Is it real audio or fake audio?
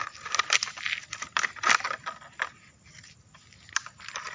real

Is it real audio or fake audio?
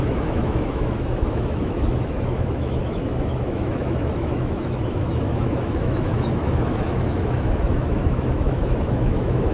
fake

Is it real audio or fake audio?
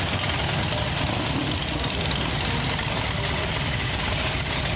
real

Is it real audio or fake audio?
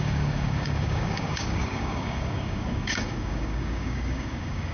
fake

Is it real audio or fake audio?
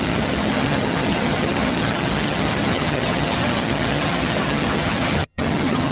fake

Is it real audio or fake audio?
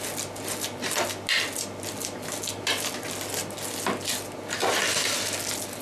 real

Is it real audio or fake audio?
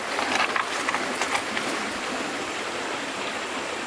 real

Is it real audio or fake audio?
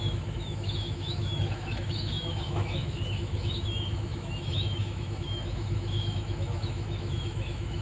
fake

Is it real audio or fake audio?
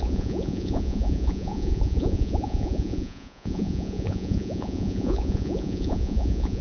fake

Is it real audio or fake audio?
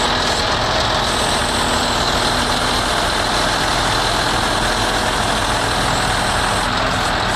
real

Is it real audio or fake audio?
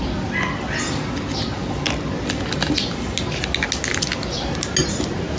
real